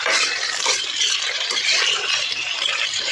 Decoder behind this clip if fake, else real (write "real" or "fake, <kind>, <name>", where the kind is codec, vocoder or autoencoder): fake, vocoder, BigVGAN v2